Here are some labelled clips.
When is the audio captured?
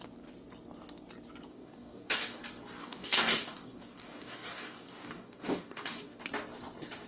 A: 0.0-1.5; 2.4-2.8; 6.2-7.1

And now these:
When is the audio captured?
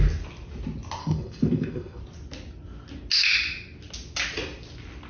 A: 0.0-1.0; 2.0-5.1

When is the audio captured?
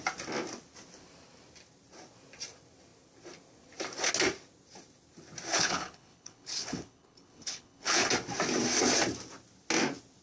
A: 0.0-5.5; 8.1-10.2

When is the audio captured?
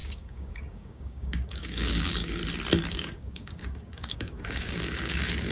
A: 2.4-2.9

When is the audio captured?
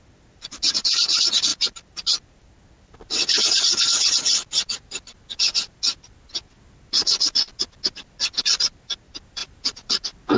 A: 0.0-10.4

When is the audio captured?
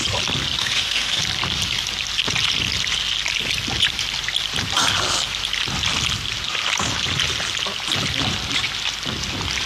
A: 0.0-0.6; 1.2-9.7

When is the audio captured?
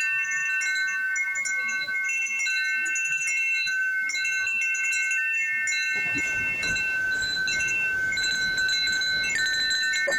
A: 0.0-10.2